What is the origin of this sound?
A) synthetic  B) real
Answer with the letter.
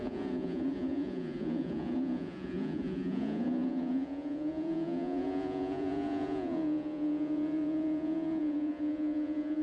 A